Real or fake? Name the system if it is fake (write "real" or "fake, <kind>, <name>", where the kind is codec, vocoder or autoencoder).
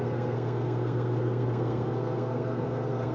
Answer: fake, codec, SNAC